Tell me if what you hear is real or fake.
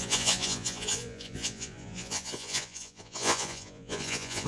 fake